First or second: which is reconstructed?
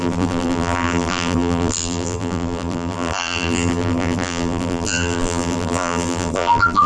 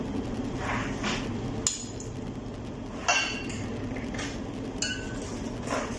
first